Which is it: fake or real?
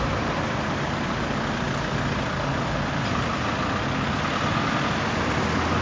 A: real